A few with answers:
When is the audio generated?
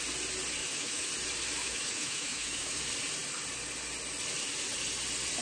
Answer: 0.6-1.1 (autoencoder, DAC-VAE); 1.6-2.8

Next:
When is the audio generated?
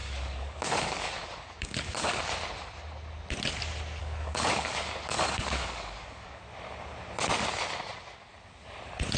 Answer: 0.0-2.2 (codec, DAC); 4.0-6.4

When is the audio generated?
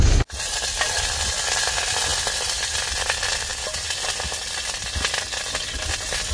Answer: none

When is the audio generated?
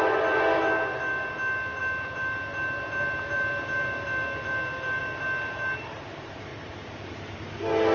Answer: none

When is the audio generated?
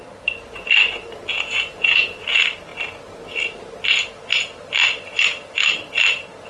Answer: 1.3-2.2 (vocoder, Vocos)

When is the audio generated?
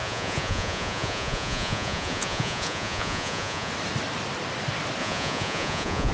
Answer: 0.0-3.7 (vocoder, Vocos); 5.0-6.1